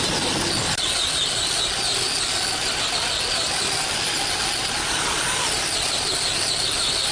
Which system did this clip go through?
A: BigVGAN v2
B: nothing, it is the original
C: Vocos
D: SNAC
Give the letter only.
B